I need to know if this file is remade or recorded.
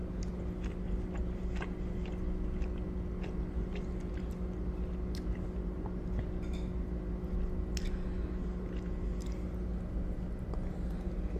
recorded